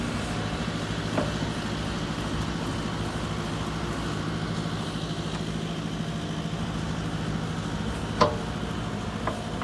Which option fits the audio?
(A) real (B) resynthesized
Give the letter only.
A